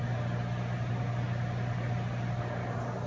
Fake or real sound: real